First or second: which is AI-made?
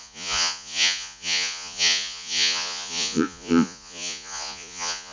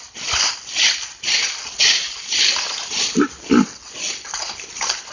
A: first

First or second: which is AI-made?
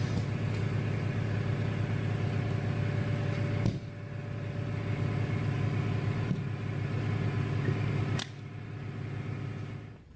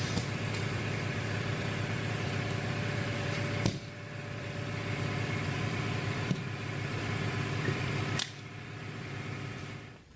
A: second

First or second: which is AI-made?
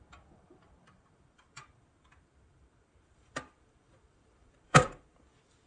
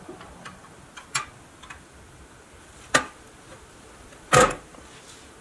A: first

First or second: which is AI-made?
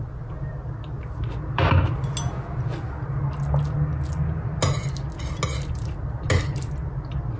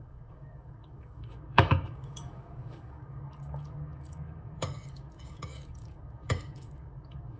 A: second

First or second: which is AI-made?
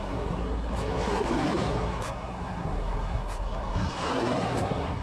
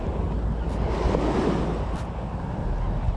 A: first